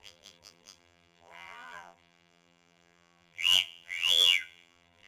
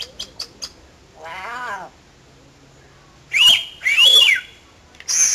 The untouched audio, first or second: second